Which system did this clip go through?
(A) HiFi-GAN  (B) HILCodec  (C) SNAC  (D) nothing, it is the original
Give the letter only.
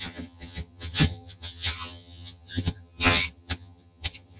A